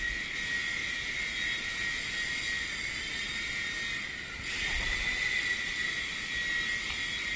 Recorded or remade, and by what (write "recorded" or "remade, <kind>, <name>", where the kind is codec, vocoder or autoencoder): recorded